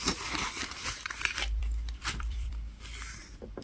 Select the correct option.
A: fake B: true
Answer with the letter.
A